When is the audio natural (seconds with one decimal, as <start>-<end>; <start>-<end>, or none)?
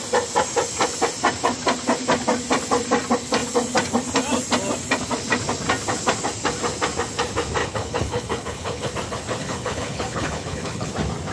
0.0-7.6; 8.9-9.4; 10.9-11.3